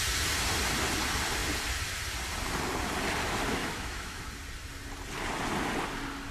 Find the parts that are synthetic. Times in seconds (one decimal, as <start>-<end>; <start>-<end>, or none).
3.6-4.2